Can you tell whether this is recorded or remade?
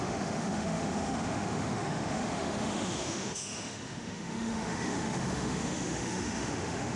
remade